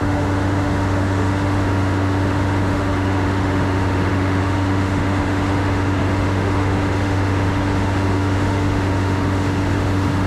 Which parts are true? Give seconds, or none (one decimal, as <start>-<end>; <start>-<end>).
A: none